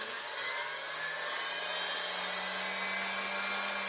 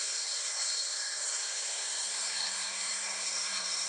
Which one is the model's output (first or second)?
second